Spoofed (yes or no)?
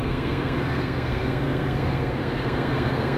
yes